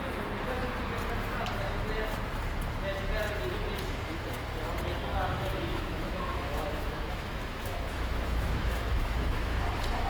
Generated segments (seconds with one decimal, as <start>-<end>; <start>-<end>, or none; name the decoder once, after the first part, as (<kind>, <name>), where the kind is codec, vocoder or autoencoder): 5.1-9.7 (autoencoder, DAC-VAE)